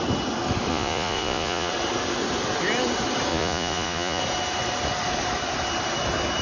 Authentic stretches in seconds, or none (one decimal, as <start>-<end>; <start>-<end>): 0.0-0.7; 1.7-3.3; 4.2-6.4